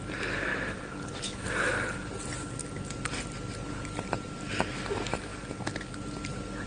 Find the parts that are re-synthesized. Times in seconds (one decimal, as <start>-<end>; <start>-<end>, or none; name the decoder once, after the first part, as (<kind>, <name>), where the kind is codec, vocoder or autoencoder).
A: none